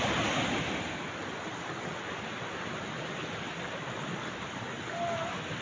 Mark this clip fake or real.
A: real